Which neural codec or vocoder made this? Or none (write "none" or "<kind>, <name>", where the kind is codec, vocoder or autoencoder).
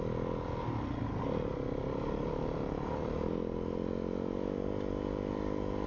none